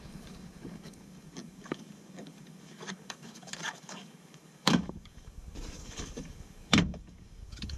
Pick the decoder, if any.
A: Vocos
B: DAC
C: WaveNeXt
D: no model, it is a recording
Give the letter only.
B